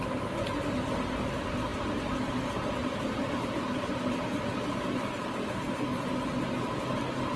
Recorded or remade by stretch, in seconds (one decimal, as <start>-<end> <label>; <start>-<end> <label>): 0.0-2.8 recorded; 2.8-4.3 remade; 4.3-5.9 recorded; 5.9-6.8 remade; 6.8-7.4 recorded

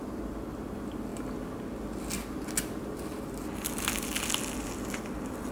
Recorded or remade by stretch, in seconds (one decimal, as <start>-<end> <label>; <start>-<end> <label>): 0.0-5.5 recorded

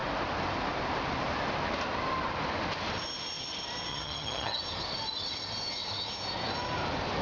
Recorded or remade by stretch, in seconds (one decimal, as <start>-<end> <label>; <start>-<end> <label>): 0.0-3.9 recorded; 3.9-4.6 remade; 4.6-7.2 recorded

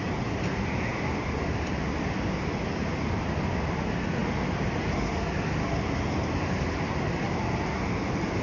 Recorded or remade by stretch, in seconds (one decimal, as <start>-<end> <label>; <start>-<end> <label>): 0.0-8.4 recorded

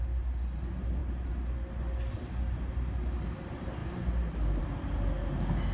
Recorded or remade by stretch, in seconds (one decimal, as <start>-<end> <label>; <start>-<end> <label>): 0.0-5.7 recorded

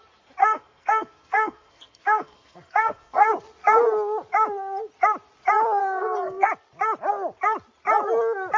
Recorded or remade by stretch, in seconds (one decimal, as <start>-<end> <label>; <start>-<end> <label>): 0.0-0.4 recorded; 0.4-3.3 remade; 3.3-5.8 recorded; 5.8-6.5 remade; 6.5-8.6 recorded